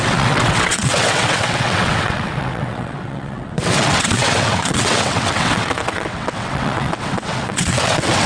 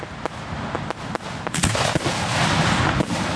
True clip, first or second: second